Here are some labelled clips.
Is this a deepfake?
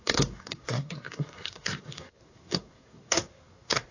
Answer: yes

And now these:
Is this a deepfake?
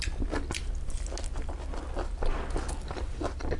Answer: no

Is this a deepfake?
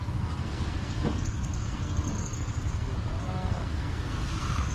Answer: yes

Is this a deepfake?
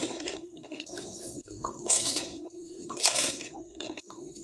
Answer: yes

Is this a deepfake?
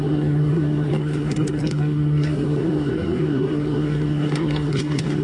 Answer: yes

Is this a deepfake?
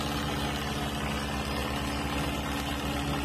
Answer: no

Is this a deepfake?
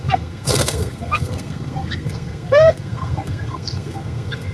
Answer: yes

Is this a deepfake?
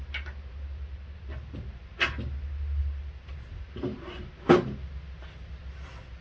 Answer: no